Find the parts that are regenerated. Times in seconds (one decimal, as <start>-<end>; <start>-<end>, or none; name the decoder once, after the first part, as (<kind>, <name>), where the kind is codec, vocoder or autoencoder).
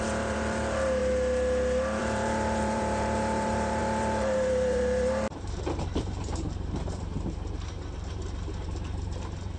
0.0-1.0 (vocoder, BigVGAN v2); 2.0-9.6